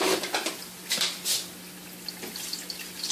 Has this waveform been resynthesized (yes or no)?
no